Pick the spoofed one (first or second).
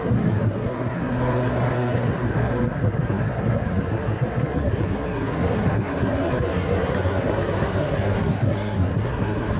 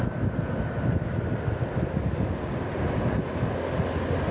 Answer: first